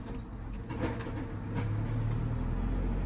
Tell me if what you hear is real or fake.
real